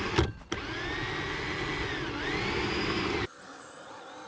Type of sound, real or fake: real